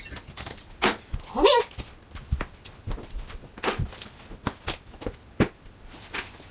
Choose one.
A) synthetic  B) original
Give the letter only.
B